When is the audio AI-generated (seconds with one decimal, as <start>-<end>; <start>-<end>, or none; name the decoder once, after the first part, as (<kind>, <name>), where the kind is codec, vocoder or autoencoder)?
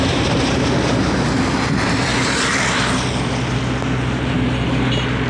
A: 2.1-2.9 (vocoder, BigVGAN v2)